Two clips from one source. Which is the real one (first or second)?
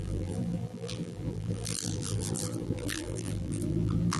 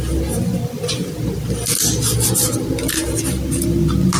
second